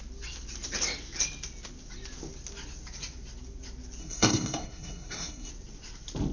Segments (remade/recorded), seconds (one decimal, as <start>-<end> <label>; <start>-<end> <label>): 0.0-4.0 recorded; 4.0-5.5 remade; 5.5-6.3 recorded